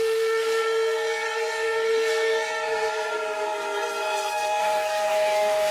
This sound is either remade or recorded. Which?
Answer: remade